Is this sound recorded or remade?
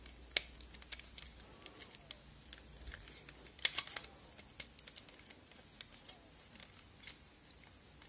recorded